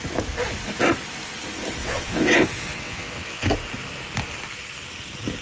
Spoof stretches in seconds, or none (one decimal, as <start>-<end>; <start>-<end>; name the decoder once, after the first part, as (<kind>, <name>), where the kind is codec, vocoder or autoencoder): 1.8-3.5 (vocoder, WaveNeXt)